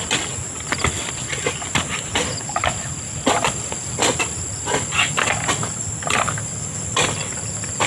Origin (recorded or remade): recorded